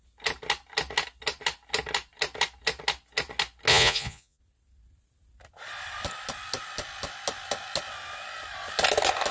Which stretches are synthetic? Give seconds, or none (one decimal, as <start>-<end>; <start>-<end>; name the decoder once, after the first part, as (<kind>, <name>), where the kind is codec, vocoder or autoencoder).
3.7-4.4 (vocoder, Vocos)